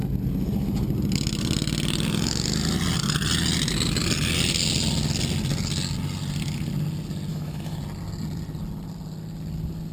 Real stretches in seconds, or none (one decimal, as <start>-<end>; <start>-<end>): 0.0-7.3; 7.8-9.9